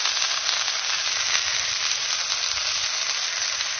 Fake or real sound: real